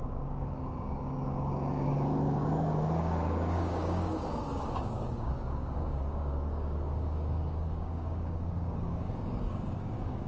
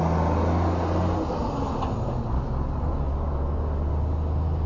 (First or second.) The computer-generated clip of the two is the first